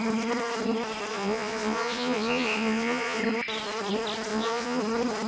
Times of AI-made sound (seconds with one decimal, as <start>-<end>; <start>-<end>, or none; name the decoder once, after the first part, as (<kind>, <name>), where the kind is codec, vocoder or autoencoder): 1.1-3.2 (vocoder, Vocos); 4.3-4.8